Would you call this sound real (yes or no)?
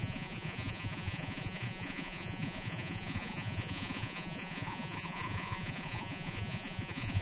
no